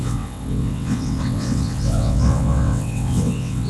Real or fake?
fake